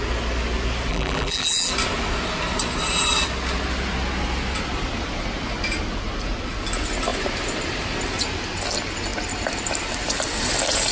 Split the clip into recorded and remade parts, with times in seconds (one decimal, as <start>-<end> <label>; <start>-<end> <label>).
0.0-0.9 recorded; 0.9-1.7 remade; 1.7-10.9 recorded